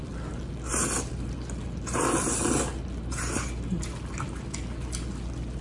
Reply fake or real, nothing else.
real